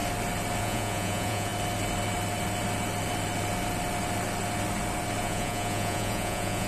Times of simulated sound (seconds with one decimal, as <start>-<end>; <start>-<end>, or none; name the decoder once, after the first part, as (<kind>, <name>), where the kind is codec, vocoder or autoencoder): 0.6-1.5 (vocoder, Vocos); 5.2-6.7